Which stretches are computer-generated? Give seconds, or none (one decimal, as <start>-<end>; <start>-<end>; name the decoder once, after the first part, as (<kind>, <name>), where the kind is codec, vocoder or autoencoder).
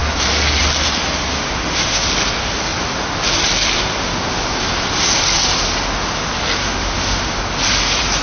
1.3-2.1 (autoencoder, DAC-VAE); 6.6-7.4